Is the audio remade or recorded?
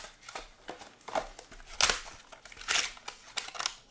recorded